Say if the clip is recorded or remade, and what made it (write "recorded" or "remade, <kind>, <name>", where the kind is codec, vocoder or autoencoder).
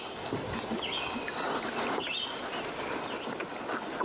recorded